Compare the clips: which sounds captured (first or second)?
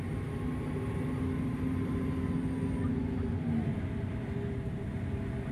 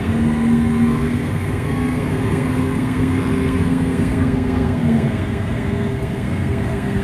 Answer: first